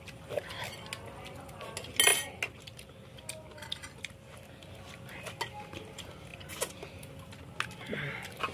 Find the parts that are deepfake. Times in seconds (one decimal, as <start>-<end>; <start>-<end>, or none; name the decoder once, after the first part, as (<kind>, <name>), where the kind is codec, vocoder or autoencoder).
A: none